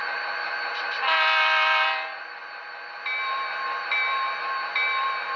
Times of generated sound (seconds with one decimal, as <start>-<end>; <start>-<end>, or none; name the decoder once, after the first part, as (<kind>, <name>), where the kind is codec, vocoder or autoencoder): none